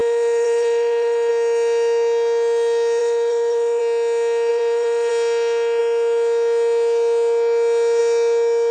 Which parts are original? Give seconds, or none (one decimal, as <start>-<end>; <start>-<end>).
1.3-3.0; 3.8-4.5; 5.1-8.7